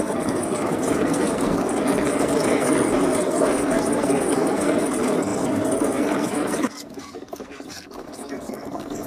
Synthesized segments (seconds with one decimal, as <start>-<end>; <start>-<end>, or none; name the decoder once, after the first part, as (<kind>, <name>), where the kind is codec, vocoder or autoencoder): 0.0-9.1 (codec, SNAC)